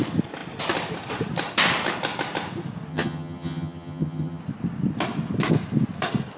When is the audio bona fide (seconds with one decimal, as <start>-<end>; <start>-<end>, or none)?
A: 0.0-2.9; 4.4-6.4